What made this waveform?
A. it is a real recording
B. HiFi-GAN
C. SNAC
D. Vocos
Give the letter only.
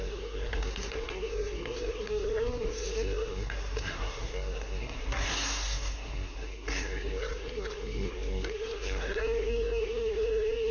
C